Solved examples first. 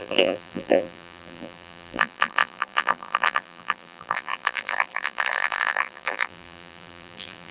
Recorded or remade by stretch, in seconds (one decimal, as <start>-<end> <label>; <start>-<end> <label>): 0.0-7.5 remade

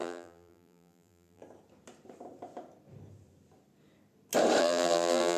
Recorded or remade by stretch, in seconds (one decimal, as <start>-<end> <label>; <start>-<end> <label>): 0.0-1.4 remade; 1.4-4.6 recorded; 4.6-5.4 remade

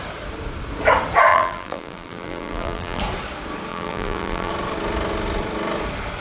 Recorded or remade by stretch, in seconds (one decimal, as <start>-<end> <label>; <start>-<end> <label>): 0.0-1.3 recorded; 1.3-3.0 remade; 3.0-3.7 recorded; 3.7-4.5 remade; 4.5-6.2 recorded

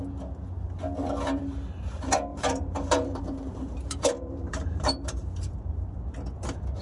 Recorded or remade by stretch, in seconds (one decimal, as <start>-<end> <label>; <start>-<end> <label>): 0.0-2.3 recorded; 2.3-5.9 remade; 5.9-6.8 recorded

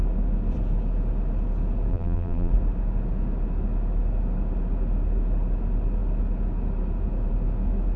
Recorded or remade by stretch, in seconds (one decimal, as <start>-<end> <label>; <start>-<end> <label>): 0.0-1.9 recorded; 1.9-2.5 remade; 2.5-8.0 recorded